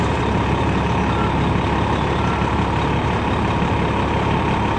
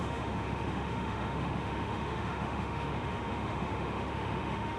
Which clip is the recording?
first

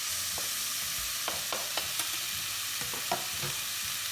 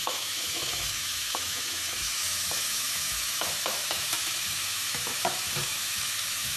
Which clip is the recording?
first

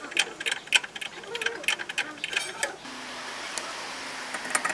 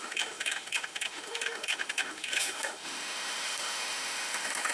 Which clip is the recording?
first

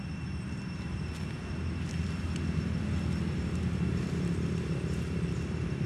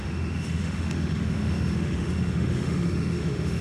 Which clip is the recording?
first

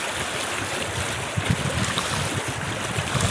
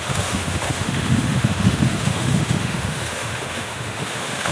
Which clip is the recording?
first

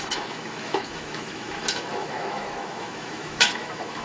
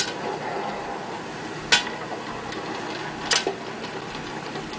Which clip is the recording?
second